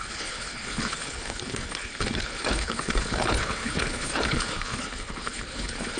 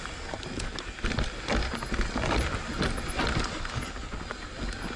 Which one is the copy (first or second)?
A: first